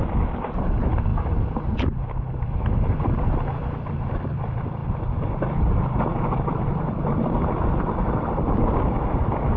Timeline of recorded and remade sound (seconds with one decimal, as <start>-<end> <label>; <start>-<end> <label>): 0.0-4.8 remade; 4.8-5.6 recorded; 5.6-9.6 remade